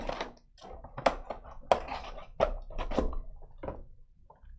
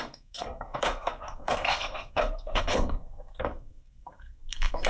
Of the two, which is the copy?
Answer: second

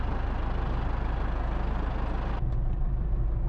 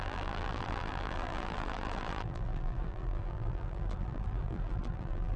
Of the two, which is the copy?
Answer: second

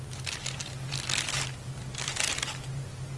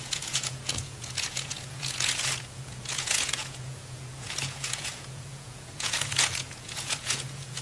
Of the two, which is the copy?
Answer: second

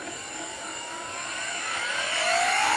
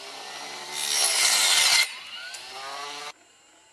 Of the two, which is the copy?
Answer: first